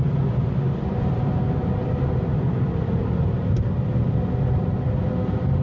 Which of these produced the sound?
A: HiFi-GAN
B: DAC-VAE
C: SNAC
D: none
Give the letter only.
D